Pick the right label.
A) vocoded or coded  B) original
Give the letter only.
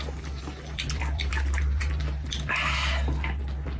B